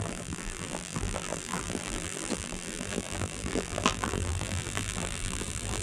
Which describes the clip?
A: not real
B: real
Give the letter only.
A